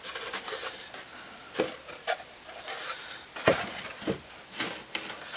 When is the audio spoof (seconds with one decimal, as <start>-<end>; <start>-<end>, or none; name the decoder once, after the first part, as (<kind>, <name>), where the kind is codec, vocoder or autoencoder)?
none